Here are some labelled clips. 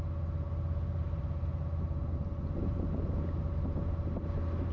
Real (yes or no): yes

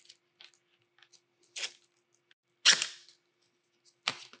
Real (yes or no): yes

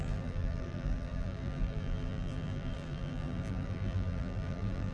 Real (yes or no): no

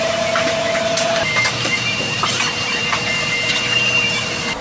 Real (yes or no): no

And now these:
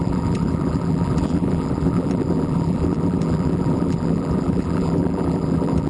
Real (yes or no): no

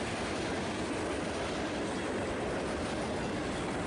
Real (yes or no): yes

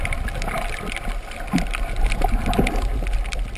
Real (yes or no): yes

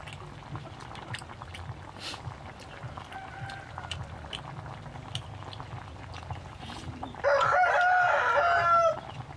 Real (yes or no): yes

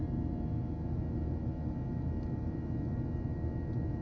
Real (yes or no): yes